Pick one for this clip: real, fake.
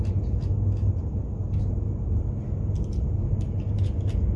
real